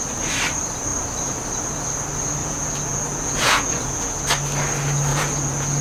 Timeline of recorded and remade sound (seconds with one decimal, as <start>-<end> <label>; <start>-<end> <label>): 0.0-2.4 recorded; 2.4-4.1 remade; 4.1-5.1 recorded; 5.1-5.8 remade